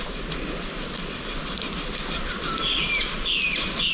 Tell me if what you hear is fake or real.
real